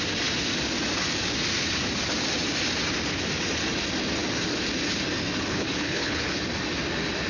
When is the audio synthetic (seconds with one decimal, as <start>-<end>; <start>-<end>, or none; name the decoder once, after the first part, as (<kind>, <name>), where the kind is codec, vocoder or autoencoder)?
5.5-6.4 (codec, HILCodec)